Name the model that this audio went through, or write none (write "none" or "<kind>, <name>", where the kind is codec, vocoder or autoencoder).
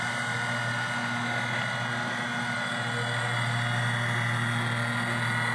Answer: none